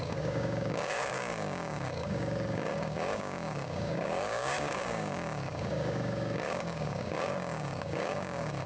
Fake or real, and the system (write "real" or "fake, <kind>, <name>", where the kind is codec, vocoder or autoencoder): fake, codec, DAC